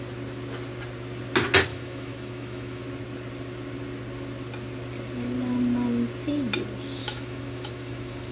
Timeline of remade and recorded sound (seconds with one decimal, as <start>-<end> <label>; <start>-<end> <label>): 0.0-1.7 recorded; 1.7-2.8 remade; 2.8-7.0 recorded; 7.0-8.3 remade